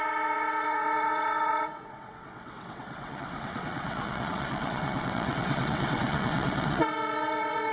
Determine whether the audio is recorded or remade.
remade